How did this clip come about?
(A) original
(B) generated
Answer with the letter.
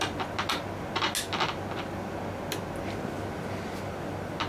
A